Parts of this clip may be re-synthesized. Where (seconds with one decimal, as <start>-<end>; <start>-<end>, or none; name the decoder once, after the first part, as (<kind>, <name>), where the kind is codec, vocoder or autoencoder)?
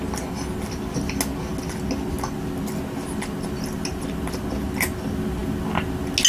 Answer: none